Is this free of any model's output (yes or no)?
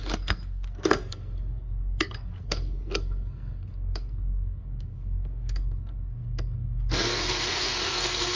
no